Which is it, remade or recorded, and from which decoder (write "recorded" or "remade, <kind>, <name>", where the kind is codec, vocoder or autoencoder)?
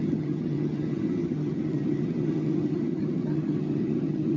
remade, vocoder, HiFi-GAN